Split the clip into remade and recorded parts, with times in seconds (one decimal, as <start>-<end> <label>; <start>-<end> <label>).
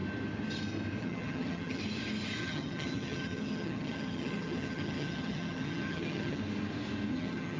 0.0-1.0 recorded; 1.0-1.8 remade; 1.8-2.4 recorded; 2.4-6.4 remade; 6.4-7.1 recorded; 7.1-7.6 remade